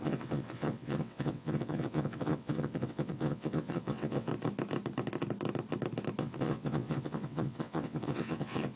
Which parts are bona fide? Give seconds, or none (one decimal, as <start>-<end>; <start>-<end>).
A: 4.3-6.2